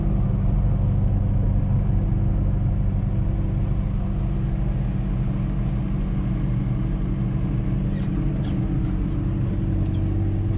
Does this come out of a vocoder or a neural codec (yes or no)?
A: no